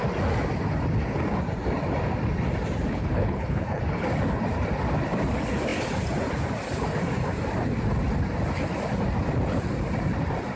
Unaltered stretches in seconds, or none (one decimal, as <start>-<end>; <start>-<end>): 0.0-2.9; 3.8-10.6